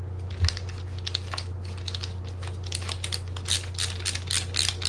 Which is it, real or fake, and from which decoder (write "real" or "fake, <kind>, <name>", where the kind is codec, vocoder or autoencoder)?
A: real